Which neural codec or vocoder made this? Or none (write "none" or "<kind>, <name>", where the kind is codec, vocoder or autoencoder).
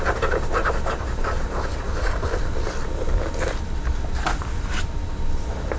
none